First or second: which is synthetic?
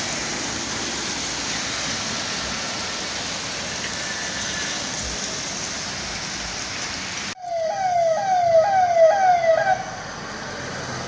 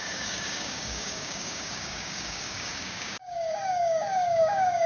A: second